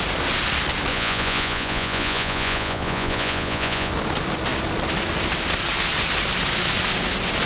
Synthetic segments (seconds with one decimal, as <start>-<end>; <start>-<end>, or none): 0.9-3.9